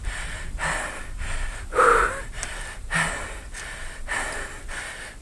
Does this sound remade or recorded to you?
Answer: recorded